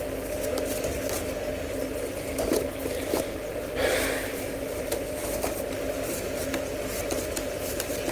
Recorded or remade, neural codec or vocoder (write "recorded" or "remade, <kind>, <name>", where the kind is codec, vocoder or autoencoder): recorded